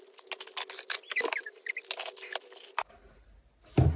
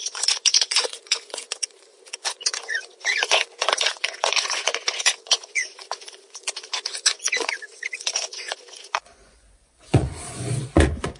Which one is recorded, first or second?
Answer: first